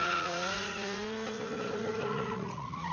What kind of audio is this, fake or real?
fake